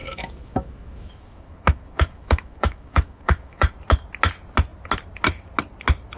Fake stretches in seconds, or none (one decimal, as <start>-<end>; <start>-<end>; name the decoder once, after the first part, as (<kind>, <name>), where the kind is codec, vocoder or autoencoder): 0.0-3.7 (autoencoder, DAC-VAE)